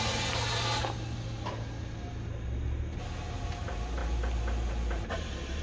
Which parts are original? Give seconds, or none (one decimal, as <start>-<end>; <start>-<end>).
0.0-5.6